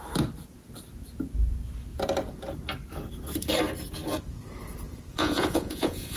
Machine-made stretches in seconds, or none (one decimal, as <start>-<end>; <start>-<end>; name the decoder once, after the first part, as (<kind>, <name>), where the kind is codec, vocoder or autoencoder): 5.1-6.2 (vocoder, Vocos)